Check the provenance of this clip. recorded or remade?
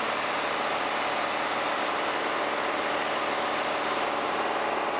recorded